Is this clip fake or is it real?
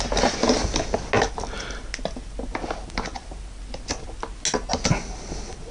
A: real